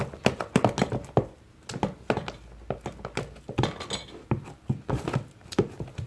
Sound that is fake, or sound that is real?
real